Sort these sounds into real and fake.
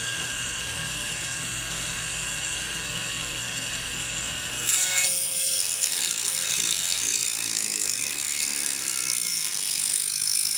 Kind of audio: fake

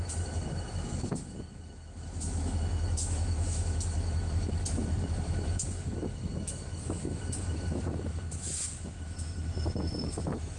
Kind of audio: fake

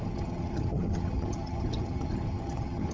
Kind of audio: fake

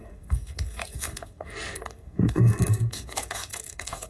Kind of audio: fake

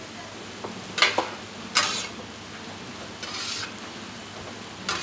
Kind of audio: real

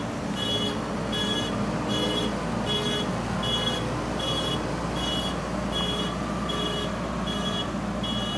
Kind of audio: real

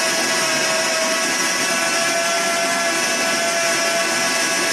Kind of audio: real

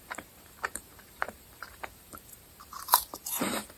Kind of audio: fake